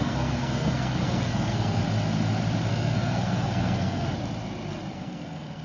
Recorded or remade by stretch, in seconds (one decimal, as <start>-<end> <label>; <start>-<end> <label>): 0.0-1.8 remade; 1.8-2.7 recorded; 2.7-4.1 remade; 4.1-4.9 recorded; 4.9-5.6 remade